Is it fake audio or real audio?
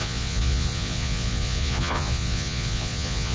fake